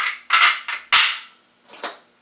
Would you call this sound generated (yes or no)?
no